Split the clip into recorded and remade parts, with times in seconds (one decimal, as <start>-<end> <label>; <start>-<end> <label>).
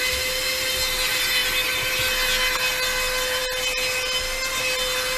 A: 0.0-5.2 recorded